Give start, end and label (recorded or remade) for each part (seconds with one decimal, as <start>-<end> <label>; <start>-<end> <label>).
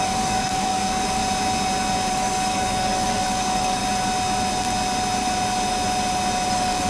0.0-1.2 remade; 1.2-2.1 recorded; 2.1-3.8 remade; 3.8-6.5 recorded; 6.5-6.9 remade